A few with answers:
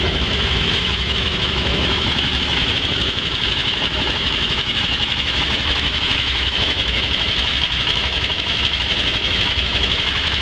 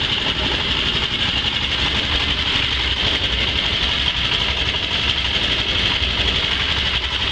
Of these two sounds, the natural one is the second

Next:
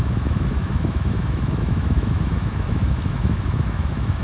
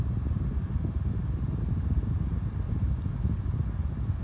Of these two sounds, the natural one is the second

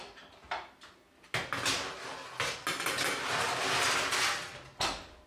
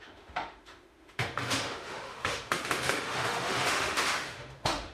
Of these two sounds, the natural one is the first